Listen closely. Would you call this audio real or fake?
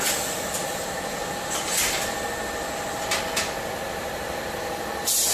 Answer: real